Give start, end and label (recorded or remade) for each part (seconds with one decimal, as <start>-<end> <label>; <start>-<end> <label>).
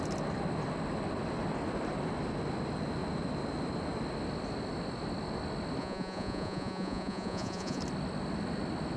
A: 0.0-5.8 recorded; 5.8-7.8 remade; 7.8-9.0 recorded